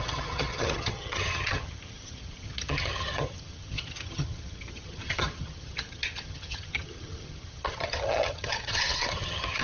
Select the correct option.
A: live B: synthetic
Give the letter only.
B